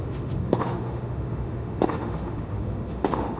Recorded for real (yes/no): no